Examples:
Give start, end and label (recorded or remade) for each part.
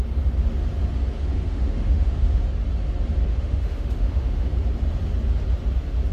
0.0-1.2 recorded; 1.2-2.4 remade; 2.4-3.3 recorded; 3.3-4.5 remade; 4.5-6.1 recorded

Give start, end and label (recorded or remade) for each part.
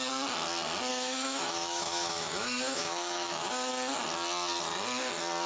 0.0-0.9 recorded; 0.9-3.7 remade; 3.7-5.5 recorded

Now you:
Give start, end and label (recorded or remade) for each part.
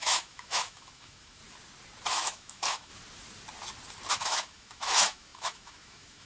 0.0-1.4 remade; 1.4-2.1 recorded; 2.1-2.9 remade; 2.9-4.1 recorded; 4.1-6.3 remade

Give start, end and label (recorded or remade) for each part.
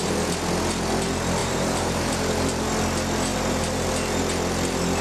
0.0-1.4 recorded; 1.4-2.1 remade; 2.1-3.3 recorded; 3.3-3.9 remade; 3.9-5.0 recorded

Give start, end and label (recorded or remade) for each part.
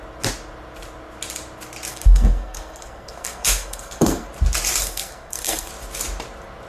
0.0-1.9 recorded; 1.9-4.3 remade; 4.3-4.8 recorded; 4.8-5.7 remade; 5.7-6.7 recorded